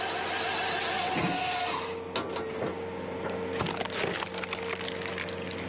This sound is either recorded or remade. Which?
recorded